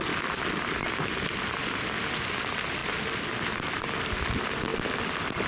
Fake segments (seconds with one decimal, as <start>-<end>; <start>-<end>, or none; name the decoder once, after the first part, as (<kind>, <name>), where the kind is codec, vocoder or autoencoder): 2.8-4.1 (vocoder, BigVGAN v2)